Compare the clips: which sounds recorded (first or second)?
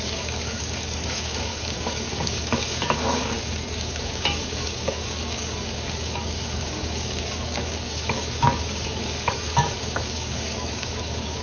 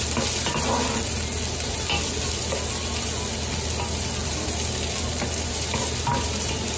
second